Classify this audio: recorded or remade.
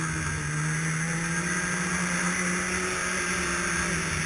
recorded